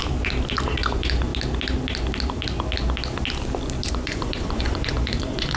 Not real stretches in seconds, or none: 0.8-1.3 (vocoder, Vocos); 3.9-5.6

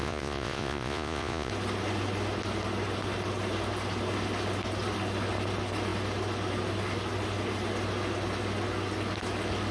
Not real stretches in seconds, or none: 0.0-1.5 (vocoder, Vocos)

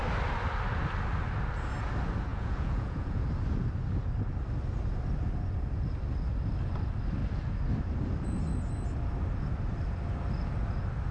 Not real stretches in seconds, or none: 2.3-3.2 (vocoder, Vocos)

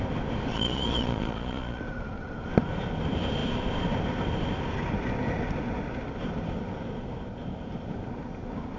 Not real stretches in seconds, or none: 0.5-1.8 (vocoder, Vocos)

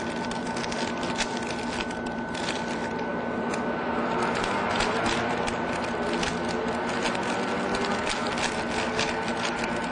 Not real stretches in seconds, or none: none

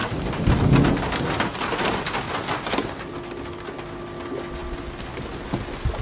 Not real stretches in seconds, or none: none

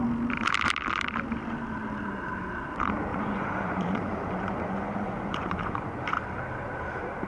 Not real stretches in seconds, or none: 3.1-6.0 (vocoder, Vocos)

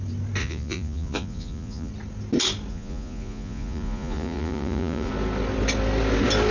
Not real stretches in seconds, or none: 0.4-1.9 (vocoder, Vocos); 2.7-5.1